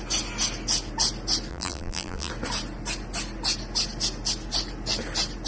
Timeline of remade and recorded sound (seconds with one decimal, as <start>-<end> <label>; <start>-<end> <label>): 0.0-1.5 recorded; 1.5-2.3 remade; 2.3-5.5 recorded